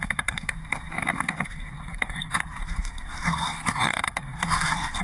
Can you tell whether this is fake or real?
fake